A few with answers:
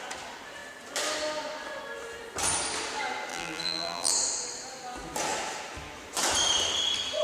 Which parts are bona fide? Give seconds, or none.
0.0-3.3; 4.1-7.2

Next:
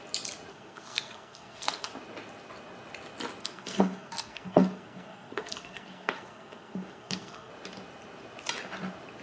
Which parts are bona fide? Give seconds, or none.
0.0-0.5; 1.9-3.4; 7.5-9.2